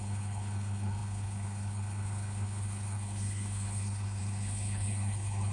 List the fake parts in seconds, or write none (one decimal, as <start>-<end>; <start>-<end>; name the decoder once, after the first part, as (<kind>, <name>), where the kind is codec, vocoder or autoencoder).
0.0-5.5 (codec, HILCodec)